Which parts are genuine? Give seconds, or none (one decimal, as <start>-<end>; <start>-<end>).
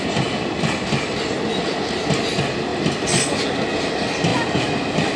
0.0-5.2